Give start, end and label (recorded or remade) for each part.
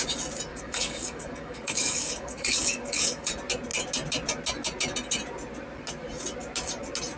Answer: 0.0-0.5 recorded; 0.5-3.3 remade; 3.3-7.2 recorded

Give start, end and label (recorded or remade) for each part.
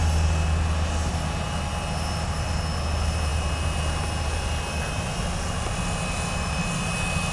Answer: 0.0-7.3 recorded